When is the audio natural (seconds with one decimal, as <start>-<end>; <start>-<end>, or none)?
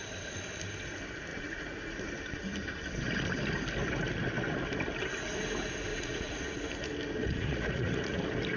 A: 0.0-1.3; 2.1-5.9; 6.6-7.2; 8.2-8.6